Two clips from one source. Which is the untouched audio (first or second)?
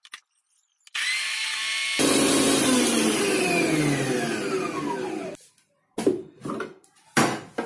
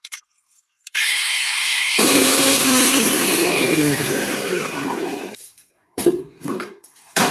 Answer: first